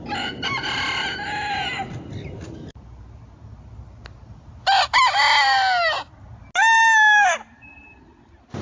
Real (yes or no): yes